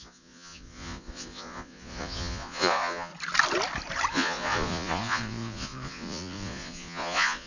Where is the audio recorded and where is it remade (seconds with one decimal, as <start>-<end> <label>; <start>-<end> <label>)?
0.0-3.1 remade; 3.1-4.1 recorded; 4.1-7.5 remade